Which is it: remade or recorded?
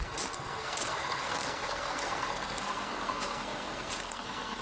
remade